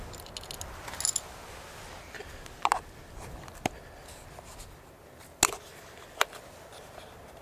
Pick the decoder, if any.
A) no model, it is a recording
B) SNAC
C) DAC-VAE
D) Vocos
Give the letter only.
A